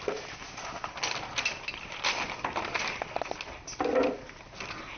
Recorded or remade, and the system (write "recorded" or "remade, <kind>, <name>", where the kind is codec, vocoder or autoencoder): recorded